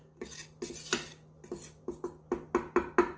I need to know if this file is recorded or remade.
recorded